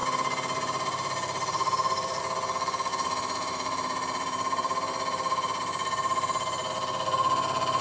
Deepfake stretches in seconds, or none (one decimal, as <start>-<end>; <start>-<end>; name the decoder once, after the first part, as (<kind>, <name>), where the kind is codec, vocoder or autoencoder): 0.0-2.2 (vocoder, BigVGAN v2); 2.9-6.7